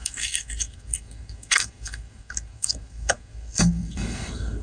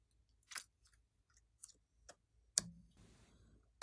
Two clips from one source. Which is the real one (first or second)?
second